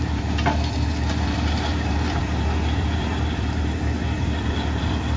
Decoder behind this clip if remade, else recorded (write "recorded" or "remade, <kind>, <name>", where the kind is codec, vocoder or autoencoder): remade, vocoder, BigVGAN v2